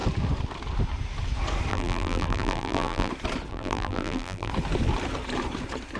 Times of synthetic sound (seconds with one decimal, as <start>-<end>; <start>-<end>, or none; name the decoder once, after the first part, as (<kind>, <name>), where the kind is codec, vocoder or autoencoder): 1.7-3.1 (vocoder, BigVGAN v2); 3.5-4.5